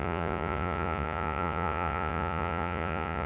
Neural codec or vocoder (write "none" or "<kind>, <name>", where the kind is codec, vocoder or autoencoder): vocoder, Vocos